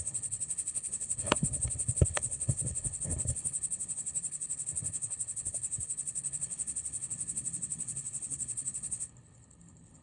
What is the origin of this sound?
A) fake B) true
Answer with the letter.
A